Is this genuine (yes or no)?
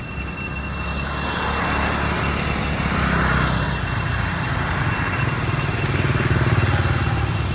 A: yes